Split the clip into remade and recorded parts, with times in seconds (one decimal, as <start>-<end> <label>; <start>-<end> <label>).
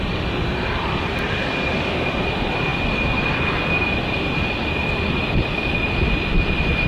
0.0-2.7 remade; 2.7-6.9 recorded